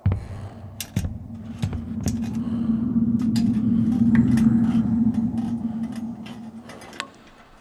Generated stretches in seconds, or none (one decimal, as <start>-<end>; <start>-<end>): none